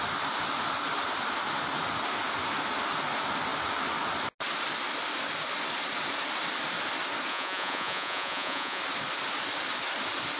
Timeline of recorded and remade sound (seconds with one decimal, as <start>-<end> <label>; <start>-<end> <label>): 0.0-7.3 recorded; 7.3-8.8 remade; 8.8-10.4 recorded